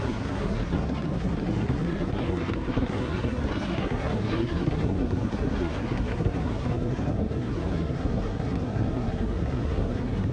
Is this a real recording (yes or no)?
no